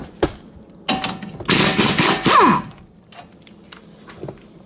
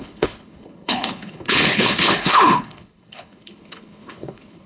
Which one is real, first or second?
first